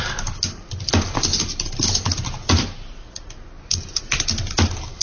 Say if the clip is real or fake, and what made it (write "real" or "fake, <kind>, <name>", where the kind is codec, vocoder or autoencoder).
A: real